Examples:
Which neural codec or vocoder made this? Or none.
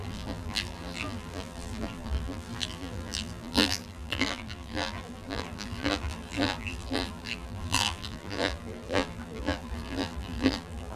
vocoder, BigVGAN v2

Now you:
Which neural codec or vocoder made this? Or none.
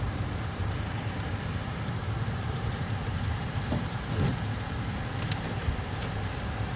vocoder, BigVGAN v2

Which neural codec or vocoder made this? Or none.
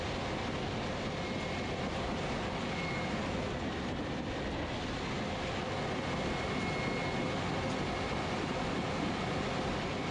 none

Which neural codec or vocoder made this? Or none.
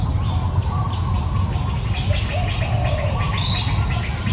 none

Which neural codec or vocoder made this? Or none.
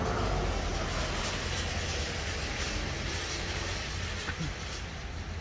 none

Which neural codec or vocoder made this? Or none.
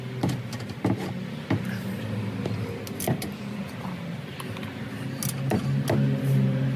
none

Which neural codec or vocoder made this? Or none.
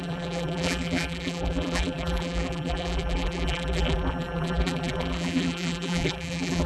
vocoder, BigVGAN v2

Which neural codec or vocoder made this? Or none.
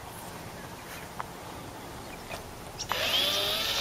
none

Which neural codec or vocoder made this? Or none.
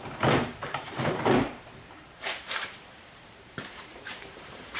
vocoder, BigVGAN v2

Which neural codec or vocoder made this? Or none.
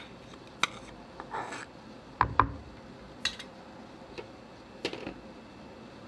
none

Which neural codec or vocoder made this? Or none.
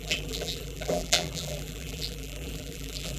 vocoder, BigVGAN v2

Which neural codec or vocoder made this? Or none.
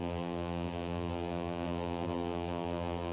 vocoder, BigVGAN v2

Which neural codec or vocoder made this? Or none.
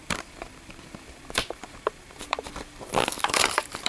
vocoder, BigVGAN v2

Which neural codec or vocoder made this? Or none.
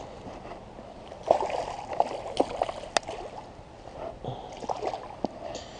none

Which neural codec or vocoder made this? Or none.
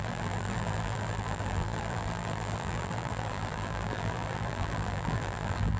vocoder, BigVGAN v2